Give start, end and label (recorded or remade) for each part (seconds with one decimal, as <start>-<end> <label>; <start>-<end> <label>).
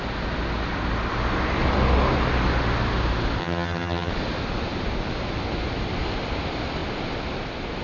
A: 0.0-3.4 recorded; 3.4-4.1 remade; 4.1-7.8 recorded